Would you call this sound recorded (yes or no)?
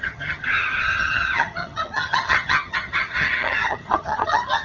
no